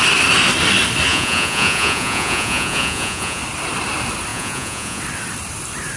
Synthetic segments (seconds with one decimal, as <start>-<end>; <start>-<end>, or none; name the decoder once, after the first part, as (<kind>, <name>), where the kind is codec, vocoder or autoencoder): 1.1-3.4 (vocoder, Vocos); 4.3-5.0